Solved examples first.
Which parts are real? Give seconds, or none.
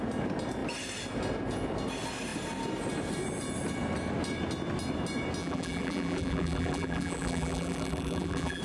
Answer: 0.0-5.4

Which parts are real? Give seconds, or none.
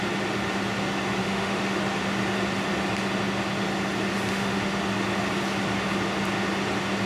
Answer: 0.0-1.2; 1.8-4.3; 4.8-7.1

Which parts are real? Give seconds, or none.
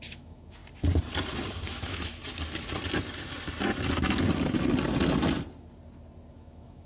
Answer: 0.6-1.7; 2.2-6.3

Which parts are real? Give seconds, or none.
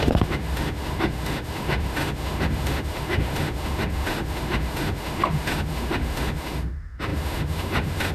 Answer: none